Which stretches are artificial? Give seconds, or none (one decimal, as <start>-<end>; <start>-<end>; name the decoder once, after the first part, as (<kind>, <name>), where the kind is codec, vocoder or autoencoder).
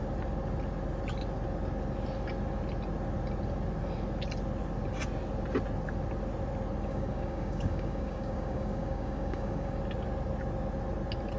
6.9-9.8 (codec, DAC)